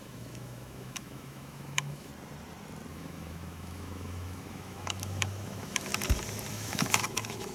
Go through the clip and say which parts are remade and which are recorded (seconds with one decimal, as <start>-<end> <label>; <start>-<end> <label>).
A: 0.0-2.1 remade; 2.1-2.9 recorded; 2.9-5.9 remade; 5.9-6.5 recorded; 6.5-7.5 remade